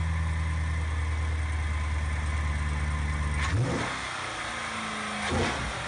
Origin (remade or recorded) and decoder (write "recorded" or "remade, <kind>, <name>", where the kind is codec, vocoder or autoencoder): recorded